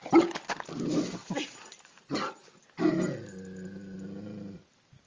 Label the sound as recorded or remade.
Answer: recorded